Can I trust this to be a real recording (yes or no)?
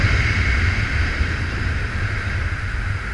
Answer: yes